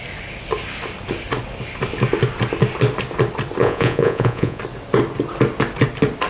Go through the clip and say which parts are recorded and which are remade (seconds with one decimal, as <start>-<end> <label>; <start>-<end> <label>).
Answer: 0.0-3.6 recorded; 3.6-4.6 remade; 4.6-6.3 recorded